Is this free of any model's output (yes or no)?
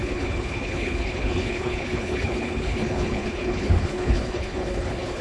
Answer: no